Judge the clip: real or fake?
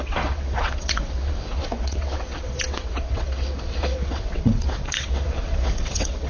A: fake